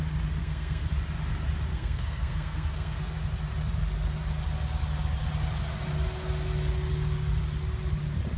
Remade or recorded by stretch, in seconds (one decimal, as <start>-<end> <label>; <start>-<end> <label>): 0.0-0.4 recorded; 0.4-0.9 remade; 0.9-1.7 recorded; 1.7-3.0 remade; 3.0-8.4 recorded